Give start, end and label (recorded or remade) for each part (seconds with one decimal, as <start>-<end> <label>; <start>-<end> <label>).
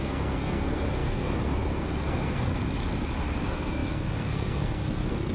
0.0-2.5 remade; 2.5-3.4 recorded; 3.4-5.3 remade